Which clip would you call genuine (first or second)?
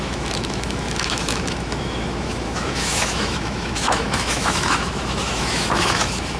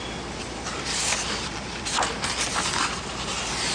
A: second